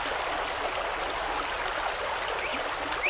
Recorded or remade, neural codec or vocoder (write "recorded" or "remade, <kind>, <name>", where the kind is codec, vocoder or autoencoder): recorded